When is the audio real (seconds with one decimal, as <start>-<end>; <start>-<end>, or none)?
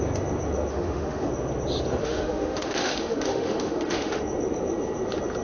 0.0-0.7; 1.3-2.0; 4.2-5.4